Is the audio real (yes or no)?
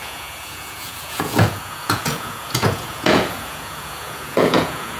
no